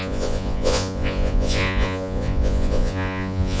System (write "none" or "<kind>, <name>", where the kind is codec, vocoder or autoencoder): vocoder, Vocos